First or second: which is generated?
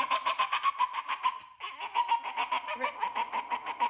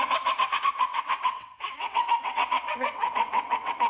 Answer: second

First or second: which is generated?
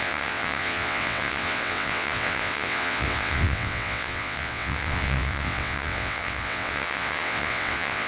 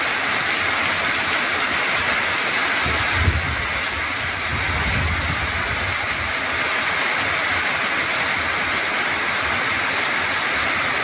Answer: first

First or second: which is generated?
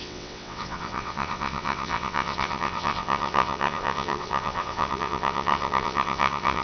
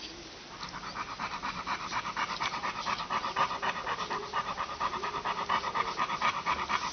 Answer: first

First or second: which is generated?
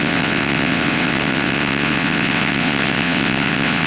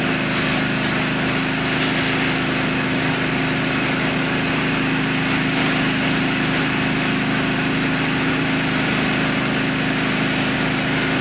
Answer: first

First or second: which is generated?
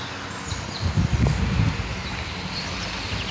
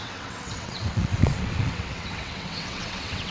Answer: second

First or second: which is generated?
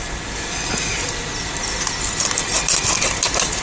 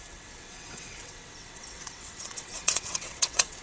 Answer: second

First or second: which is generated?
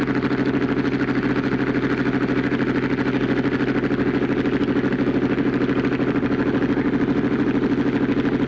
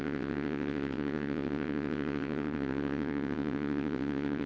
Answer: second